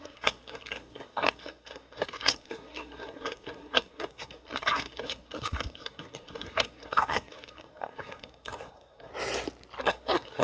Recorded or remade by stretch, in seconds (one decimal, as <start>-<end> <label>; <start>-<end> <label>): 0.0-9.1 remade; 9.1-9.8 recorded; 9.8-10.4 remade